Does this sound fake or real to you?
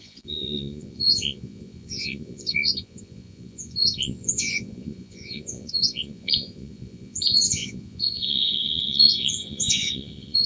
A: fake